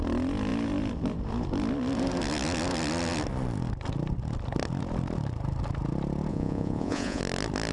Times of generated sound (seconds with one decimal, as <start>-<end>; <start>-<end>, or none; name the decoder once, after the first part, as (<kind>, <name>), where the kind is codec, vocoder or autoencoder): 6.3-7.2 (vocoder, Vocos)